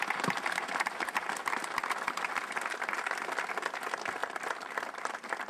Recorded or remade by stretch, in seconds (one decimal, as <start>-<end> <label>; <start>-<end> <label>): 0.0-4.2 recorded; 4.2-5.5 remade